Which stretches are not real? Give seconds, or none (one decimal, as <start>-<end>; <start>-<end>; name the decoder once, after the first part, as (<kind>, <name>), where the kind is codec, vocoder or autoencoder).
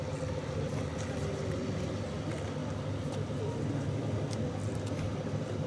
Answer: none